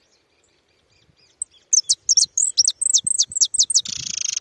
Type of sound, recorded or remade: recorded